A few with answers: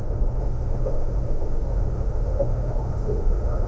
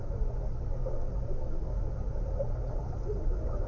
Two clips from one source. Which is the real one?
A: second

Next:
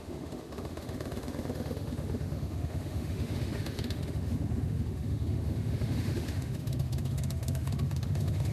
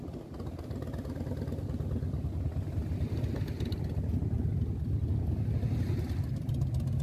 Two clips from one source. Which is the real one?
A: second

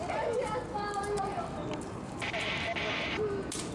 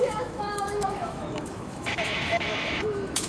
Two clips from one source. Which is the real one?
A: first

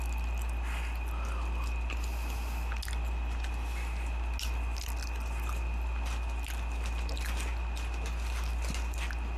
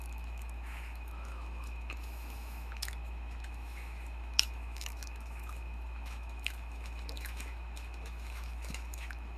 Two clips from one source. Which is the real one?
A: first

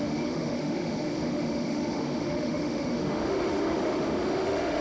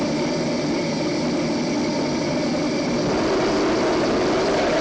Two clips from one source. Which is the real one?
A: second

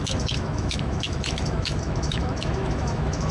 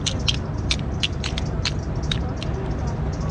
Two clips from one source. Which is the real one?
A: second